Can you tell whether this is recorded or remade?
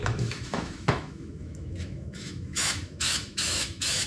remade